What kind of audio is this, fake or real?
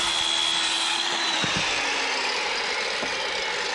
real